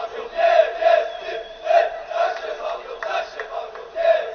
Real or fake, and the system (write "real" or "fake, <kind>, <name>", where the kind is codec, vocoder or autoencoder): real